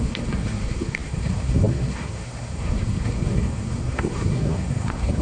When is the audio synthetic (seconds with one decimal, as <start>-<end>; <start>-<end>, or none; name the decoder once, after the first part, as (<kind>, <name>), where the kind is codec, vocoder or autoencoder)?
0.0-5.2 (codec, SNAC)